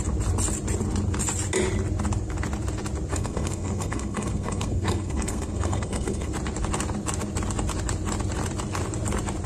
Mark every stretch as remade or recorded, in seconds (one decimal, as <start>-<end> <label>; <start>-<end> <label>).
0.0-3.1 recorded; 3.1-6.3 remade; 6.3-9.5 recorded